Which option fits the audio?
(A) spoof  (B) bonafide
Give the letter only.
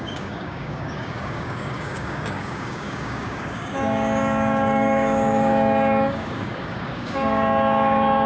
A